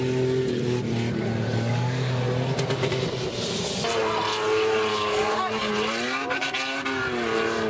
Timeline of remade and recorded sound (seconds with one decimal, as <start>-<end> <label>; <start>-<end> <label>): 0.0-1.5 recorded; 1.5-2.2 remade; 2.2-4.9 recorded; 4.9-5.7 remade; 5.7-7.7 recorded